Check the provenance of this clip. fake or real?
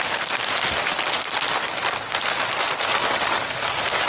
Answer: real